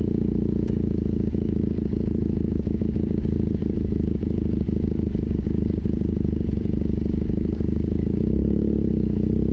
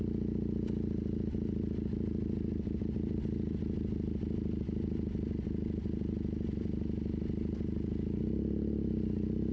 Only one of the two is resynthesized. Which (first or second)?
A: first